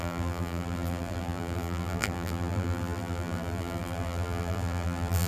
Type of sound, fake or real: fake